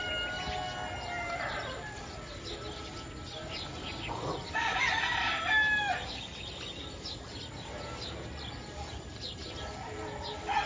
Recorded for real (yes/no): yes